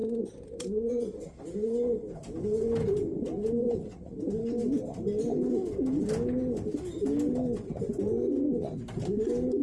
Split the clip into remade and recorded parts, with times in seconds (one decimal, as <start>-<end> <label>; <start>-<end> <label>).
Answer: 0.0-9.6 recorded